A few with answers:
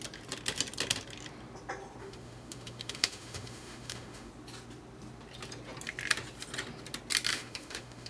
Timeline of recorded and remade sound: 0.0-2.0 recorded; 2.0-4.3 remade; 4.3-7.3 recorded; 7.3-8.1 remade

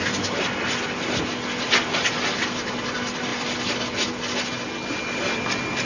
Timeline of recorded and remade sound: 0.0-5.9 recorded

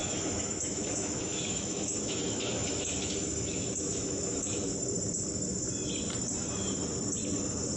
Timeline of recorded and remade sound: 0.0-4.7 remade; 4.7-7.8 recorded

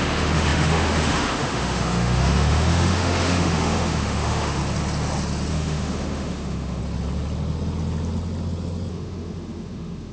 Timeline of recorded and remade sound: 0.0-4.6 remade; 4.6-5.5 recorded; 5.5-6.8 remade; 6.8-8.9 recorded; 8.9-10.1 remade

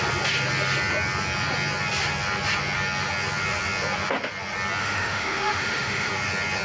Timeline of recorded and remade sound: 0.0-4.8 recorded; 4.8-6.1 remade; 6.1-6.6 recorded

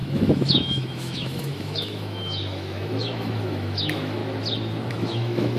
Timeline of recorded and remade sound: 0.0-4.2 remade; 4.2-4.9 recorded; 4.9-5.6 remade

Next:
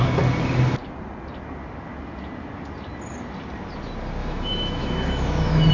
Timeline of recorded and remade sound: 0.0-4.2 recorded; 4.2-5.7 remade